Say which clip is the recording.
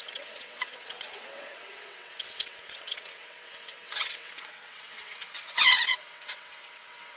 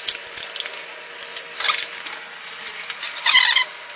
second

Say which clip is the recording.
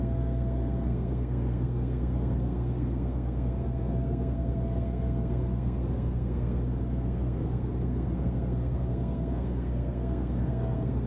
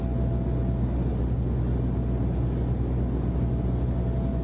second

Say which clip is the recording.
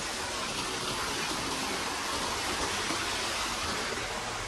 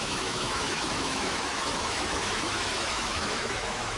first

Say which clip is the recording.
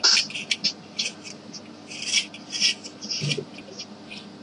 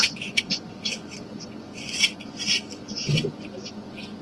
first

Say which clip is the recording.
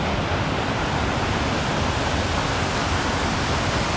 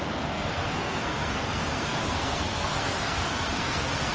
first